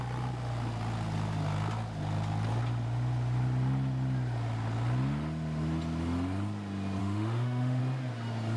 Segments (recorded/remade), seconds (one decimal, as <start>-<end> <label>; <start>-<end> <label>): 0.0-7.0 recorded; 7.0-7.8 remade; 7.8-8.6 recorded